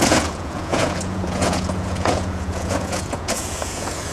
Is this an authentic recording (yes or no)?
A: no